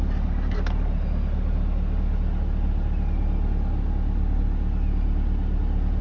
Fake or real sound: real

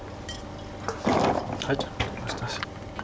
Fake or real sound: real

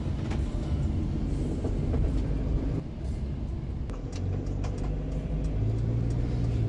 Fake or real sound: real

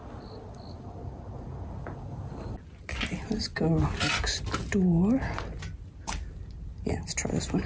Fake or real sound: real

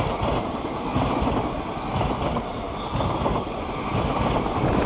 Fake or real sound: real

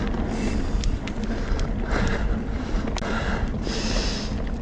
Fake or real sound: real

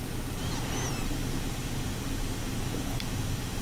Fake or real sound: real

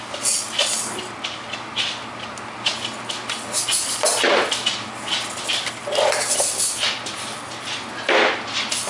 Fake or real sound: real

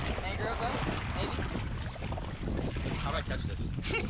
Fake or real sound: real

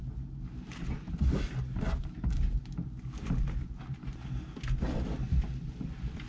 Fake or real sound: real